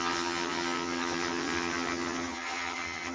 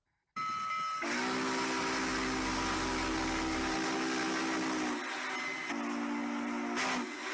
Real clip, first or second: second